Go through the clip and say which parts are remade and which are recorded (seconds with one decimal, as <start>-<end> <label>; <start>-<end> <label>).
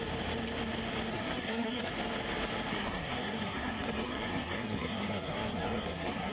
0.0-1.1 recorded; 1.1-1.9 remade; 1.9-2.7 recorded; 2.7-6.3 remade